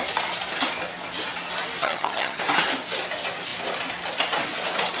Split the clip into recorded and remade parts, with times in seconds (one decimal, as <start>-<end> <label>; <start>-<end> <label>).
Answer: 0.0-1.8 recorded; 1.8-2.4 remade; 2.4-5.0 recorded